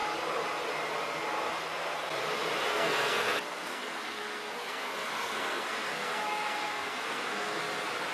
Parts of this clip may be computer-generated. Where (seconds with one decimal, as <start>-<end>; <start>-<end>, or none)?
2.7-7.6